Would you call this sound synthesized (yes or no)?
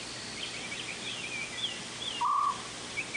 no